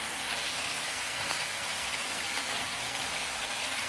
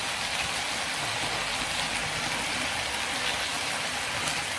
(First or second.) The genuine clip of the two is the second